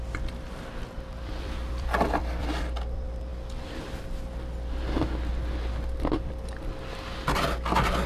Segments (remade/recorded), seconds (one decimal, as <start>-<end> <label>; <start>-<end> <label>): 0.0-3.3 remade; 3.3-8.1 recorded